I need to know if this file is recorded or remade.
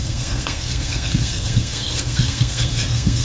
remade